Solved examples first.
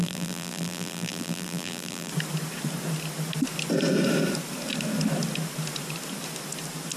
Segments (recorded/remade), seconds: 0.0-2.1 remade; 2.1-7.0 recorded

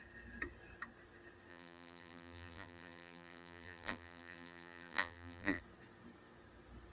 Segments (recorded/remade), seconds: 0.0-1.5 recorded; 1.5-5.6 remade; 5.6-6.9 recorded

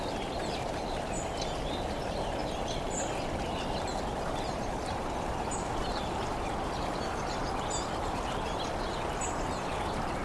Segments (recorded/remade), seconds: 0.0-2.4 recorded; 2.4-2.9 remade; 2.9-4.5 recorded; 4.5-6.5 remade; 6.5-10.2 recorded

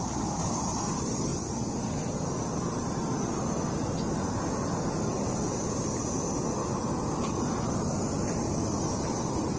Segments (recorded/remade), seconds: 0.0-1.3 remade; 1.3-4.8 recorded; 4.8-6.6 remade; 6.6-7.7 recorded; 7.7-9.6 remade

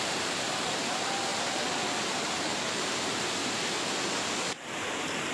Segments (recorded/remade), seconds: 0.0-1.3 remade; 1.3-2.2 recorded; 2.2-3.4 remade; 3.4-4.1 recorded; 4.1-5.3 remade